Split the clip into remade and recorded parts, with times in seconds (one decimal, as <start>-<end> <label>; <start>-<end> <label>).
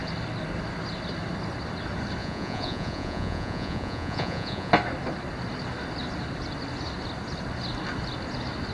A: 0.0-2.2 recorded; 2.2-4.7 remade; 4.7-8.7 recorded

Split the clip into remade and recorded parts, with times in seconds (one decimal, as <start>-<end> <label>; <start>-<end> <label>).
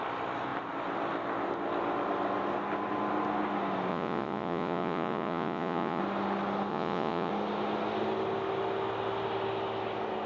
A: 0.0-3.9 recorded; 3.9-6.0 remade; 6.0-6.7 recorded; 6.7-7.3 remade; 7.3-10.3 recorded